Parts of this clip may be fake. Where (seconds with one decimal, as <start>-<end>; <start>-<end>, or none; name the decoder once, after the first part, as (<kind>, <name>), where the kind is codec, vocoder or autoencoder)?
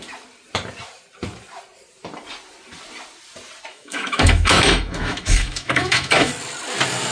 3.7-6.3 (autoencoder, DAC-VAE)